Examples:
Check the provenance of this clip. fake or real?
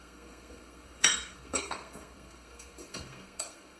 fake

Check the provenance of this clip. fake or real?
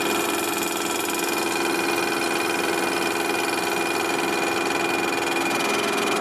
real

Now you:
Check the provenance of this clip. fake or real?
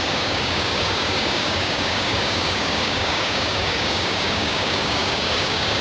fake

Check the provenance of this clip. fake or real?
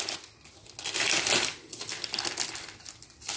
real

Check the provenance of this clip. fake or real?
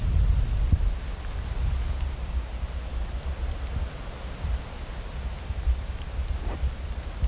real